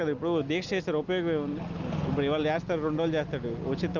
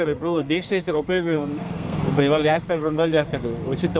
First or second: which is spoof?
second